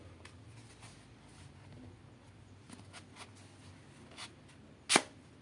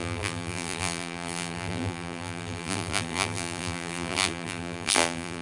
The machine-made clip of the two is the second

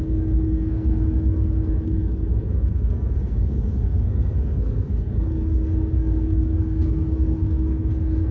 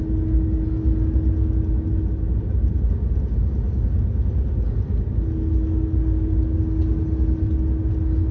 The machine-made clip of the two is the first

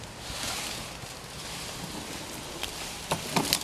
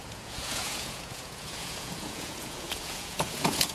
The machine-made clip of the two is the second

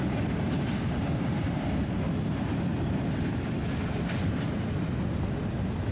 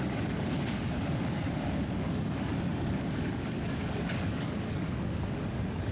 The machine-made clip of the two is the second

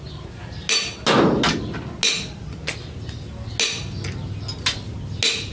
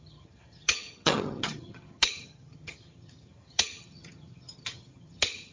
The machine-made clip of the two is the second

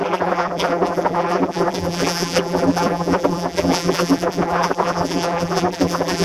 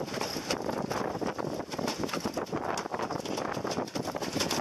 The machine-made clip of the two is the first